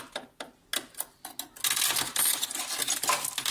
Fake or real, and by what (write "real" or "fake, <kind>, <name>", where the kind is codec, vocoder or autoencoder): real